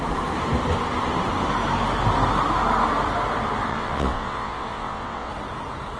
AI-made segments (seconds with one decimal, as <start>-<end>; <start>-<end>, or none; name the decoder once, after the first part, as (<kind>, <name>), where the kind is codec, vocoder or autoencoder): 3.7-5.3 (vocoder, WaveNeXt)